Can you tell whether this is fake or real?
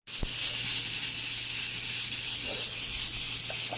real